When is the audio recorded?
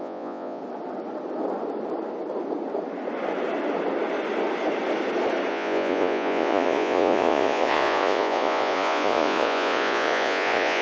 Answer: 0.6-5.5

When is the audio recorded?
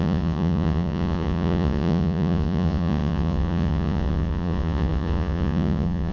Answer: none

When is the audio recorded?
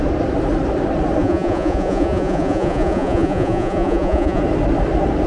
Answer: 0.0-1.2; 4.4-5.3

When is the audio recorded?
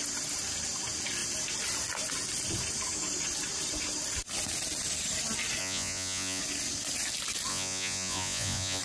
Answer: 0.0-5.6; 6.4-7.5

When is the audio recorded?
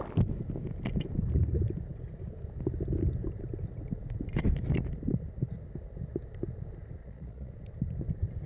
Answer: 0.0-7.0; 7.5-8.5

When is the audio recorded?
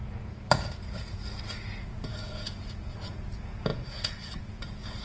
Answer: none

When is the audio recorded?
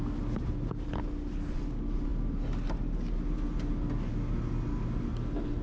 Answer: 0.0-5.6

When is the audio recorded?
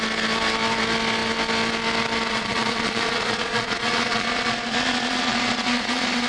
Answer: 0.0-2.3